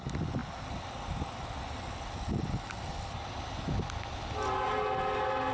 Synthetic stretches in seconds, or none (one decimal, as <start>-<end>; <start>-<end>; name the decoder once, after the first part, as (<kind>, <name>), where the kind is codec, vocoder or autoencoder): none